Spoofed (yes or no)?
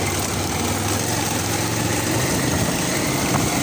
no